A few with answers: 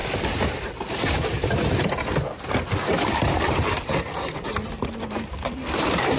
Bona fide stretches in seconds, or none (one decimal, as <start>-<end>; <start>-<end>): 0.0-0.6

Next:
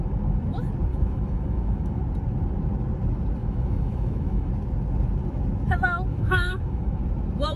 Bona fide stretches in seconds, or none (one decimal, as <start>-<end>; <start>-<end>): 0.0-0.9; 2.0-3.4; 4.5-6.1; 7.0-7.6

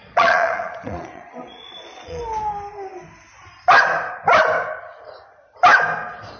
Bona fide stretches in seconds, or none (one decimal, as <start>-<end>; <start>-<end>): 2.2-6.4